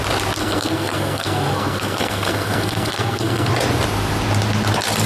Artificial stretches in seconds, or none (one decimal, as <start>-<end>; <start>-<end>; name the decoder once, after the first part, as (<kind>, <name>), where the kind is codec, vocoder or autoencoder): 0.4-3.5 (codec, SNAC)